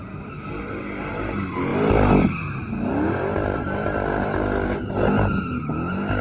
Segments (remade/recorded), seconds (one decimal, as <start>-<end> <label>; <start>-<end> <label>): 0.0-6.2 recorded